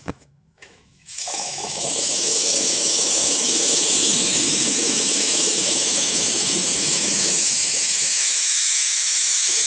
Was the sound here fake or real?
fake